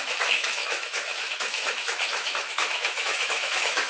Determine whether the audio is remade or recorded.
remade